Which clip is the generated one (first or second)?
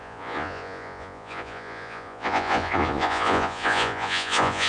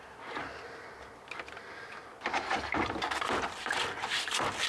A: first